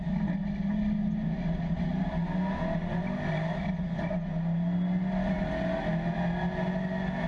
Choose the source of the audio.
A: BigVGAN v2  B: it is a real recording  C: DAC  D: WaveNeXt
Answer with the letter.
B